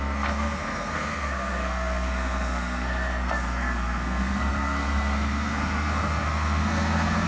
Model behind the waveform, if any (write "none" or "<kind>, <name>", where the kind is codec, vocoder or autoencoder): codec, SNAC